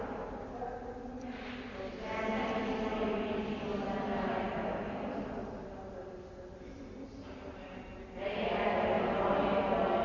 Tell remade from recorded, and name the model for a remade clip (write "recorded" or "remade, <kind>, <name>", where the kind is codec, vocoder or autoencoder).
recorded